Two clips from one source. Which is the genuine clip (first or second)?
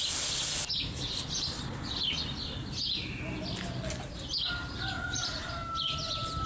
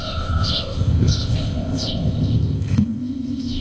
first